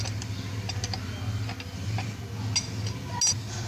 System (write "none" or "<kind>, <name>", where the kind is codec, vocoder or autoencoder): none